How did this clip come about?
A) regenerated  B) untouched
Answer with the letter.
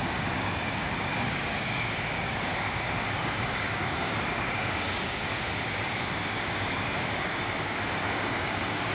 A